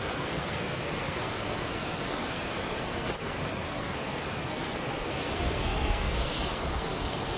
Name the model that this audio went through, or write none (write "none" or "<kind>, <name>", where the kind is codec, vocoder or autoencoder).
codec, SNAC